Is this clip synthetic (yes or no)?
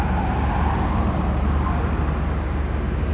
no